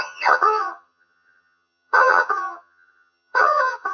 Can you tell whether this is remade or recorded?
remade